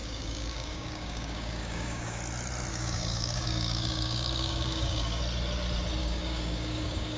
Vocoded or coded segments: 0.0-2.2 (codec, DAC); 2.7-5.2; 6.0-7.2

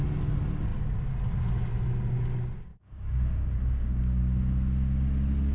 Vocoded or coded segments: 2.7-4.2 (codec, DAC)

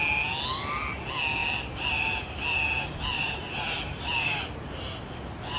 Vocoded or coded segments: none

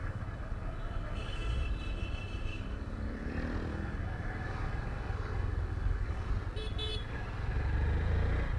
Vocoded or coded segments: 0.0-1.5 (codec, DAC); 2.5-3.3; 3.7-6.3

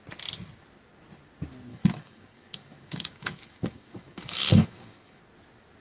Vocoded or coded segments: 1.7-5.2 (codec, DAC)

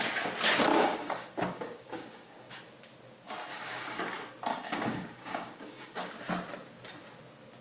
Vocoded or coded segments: 0.7-2.5 (codec, DAC); 3.5-4.0; 4.5-6.1

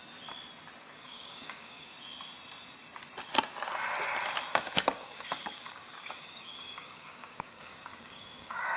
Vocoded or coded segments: 0.8-1.9 (codec, DAC); 4.5-8.8